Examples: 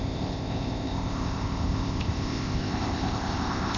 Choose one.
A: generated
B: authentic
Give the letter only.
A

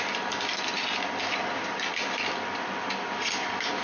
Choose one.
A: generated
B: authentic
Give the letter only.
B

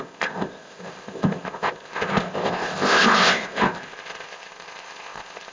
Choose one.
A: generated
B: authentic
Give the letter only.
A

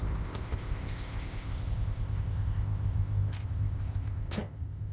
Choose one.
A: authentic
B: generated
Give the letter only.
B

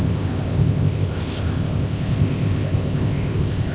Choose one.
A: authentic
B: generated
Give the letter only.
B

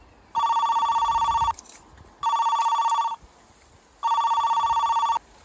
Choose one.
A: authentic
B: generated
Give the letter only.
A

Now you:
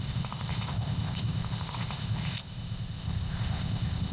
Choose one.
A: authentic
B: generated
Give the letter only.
B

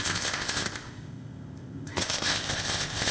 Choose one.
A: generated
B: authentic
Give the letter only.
A